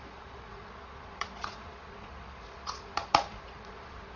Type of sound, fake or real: fake